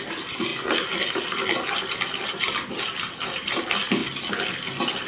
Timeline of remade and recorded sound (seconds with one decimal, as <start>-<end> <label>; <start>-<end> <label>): 0.0-5.1 recorded